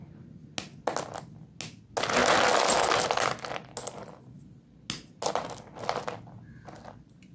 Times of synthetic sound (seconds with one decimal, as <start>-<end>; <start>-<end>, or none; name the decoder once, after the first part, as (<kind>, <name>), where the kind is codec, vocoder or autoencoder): none